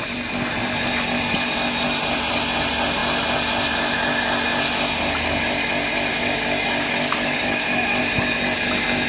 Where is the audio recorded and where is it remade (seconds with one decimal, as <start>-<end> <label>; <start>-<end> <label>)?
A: 0.0-6.1 recorded; 6.1-8.0 remade; 8.0-9.1 recorded